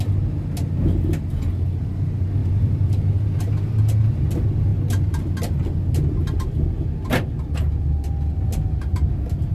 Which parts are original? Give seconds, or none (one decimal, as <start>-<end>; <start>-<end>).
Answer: 0.0-2.4; 3.4-9.5